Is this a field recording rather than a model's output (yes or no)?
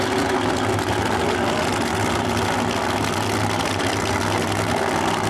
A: yes